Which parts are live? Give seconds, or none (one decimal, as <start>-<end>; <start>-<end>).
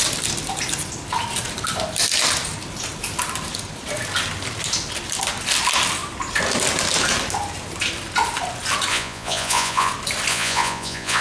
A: 0.0-8.9; 9.9-10.3